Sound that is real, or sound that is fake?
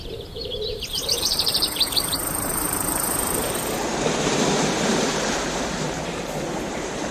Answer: fake